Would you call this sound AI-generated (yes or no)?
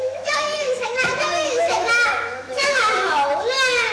yes